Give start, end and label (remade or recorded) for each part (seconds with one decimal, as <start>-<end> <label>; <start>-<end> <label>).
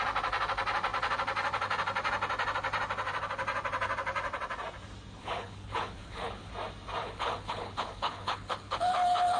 0.0-5.2 recorded; 5.2-6.5 remade; 6.5-7.0 recorded; 7.0-9.4 remade